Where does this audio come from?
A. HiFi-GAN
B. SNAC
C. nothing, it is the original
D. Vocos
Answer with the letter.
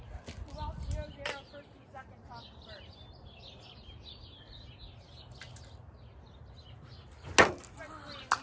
C